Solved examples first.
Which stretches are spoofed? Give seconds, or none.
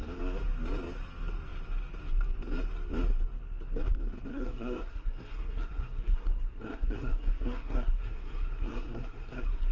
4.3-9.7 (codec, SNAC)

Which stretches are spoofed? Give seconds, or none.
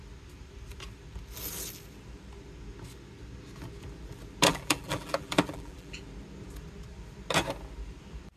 4.5-6.0 (vocoder, BigVGAN v2)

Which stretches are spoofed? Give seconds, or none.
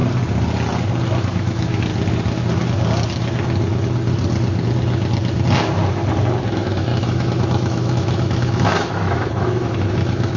1.2-1.9 (autoencoder, DAC-VAE); 6.4-10.4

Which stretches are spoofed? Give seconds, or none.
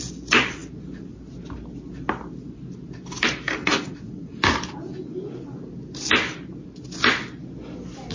3.6-4.4 (vocoder, Vocos)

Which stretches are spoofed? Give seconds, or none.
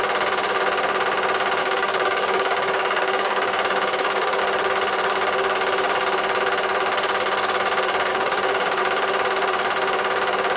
1.6-4.4 (codec, DAC); 8.1-8.8